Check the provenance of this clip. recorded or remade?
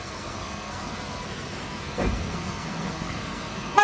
remade